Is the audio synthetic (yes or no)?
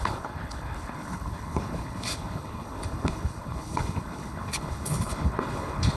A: yes